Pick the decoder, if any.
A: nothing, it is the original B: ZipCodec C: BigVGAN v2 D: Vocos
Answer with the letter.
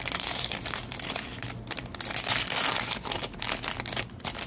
A